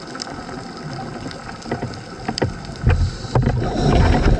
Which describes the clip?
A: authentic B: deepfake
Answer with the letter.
A